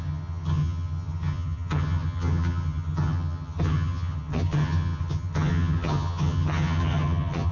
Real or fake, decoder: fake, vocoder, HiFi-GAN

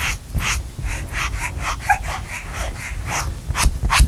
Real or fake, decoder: real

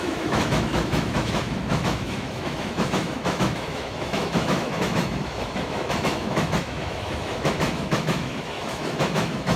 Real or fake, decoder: fake, autoencoder, DAC-VAE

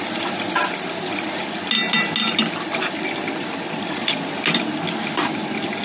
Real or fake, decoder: real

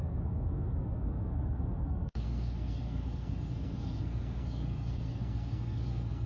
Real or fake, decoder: fake, codec, SNAC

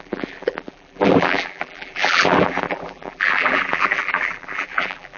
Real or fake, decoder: fake, vocoder, BigVGAN v2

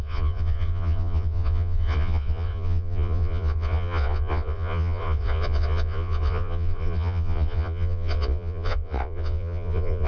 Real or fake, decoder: fake, vocoder, Vocos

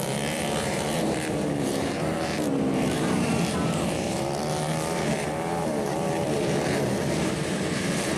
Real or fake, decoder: fake, vocoder, BigVGAN v2